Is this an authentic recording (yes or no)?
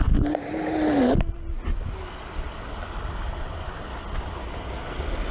yes